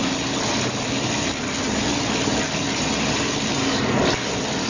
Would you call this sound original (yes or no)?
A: yes